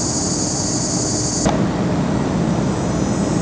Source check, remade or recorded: recorded